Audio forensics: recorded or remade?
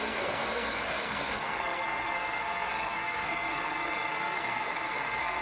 remade